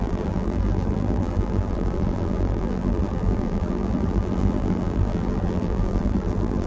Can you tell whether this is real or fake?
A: fake